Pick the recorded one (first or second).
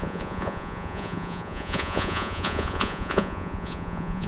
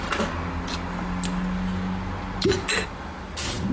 second